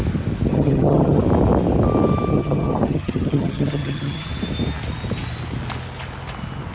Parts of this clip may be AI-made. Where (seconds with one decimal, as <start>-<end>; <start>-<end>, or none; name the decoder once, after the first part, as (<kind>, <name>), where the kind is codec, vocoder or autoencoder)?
0.5-1.2 (vocoder, HiFi-GAN); 2.3-4.3